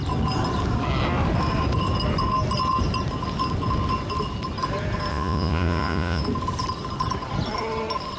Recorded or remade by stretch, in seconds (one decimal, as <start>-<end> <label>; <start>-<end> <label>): 0.0-5.1 recorded; 5.1-6.2 remade; 6.2-8.2 recorded